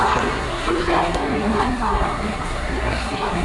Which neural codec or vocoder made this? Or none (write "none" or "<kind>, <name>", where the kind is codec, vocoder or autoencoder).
codec, SNAC